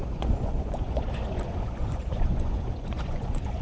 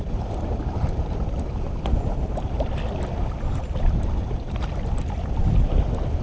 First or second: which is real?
second